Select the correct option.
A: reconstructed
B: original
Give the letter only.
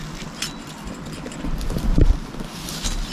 B